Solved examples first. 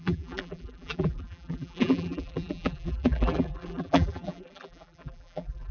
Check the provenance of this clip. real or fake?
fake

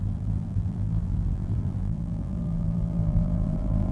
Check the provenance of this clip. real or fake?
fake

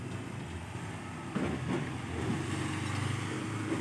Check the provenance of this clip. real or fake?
real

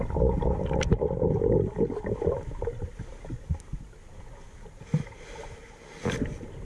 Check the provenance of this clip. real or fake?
real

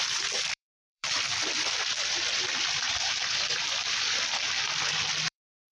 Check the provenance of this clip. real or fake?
fake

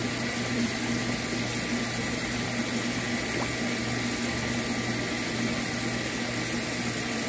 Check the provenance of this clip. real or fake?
real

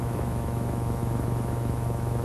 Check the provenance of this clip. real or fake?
fake